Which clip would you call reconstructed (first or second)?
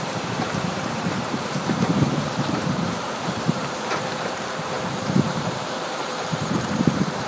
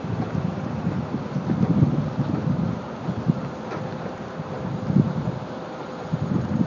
first